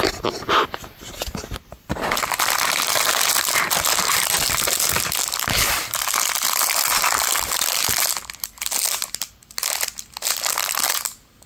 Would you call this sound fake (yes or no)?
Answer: no